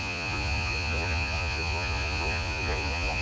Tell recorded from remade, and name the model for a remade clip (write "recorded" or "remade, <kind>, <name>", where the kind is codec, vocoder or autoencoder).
remade, vocoder, Vocos